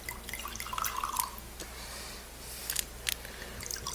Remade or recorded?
recorded